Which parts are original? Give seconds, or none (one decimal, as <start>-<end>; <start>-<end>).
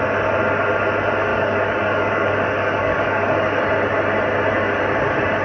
0.0-1.3; 3.6-5.4